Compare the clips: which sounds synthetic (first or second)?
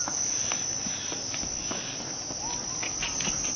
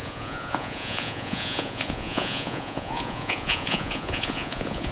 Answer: second